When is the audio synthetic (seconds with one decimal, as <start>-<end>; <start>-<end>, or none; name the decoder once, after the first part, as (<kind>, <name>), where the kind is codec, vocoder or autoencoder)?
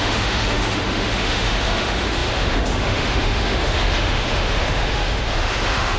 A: 0.0-6.0 (autoencoder, DAC-VAE)